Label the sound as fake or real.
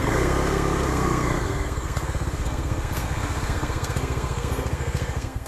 fake